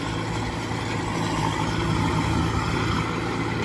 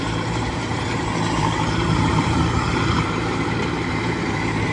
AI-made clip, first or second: second